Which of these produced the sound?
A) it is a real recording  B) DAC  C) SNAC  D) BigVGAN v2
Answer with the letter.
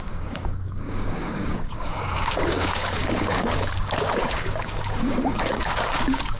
B